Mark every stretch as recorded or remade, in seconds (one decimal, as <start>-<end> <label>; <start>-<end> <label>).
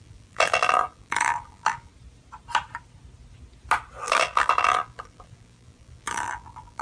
0.0-1.9 remade; 1.9-4.0 recorded; 4.0-6.8 remade